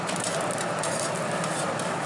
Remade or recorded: recorded